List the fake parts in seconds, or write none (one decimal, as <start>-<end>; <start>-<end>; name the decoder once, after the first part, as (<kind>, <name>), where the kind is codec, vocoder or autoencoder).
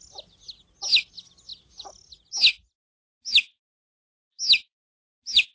none